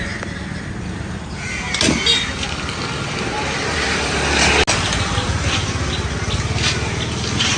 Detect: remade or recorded recorded